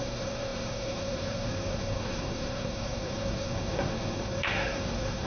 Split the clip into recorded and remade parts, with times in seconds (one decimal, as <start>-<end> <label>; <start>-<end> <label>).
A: 0.0-5.3 remade